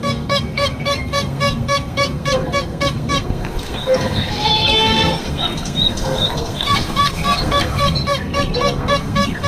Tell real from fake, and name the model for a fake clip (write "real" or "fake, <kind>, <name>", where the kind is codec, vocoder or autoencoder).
fake, codec, SNAC